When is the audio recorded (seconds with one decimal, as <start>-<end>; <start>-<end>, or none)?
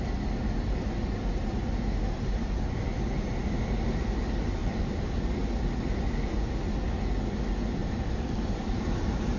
0.0-4.6; 5.2-7.8